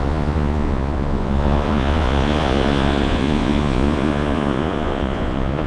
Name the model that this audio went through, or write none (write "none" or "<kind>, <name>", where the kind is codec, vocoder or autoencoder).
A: vocoder, Vocos